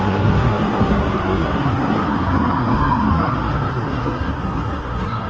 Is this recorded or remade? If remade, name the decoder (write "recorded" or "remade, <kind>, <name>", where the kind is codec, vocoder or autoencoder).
remade, codec, SNAC